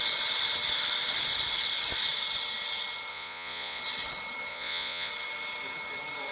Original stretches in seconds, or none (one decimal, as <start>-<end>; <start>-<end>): 0.0-3.1; 3.8-4.5; 5.1-6.3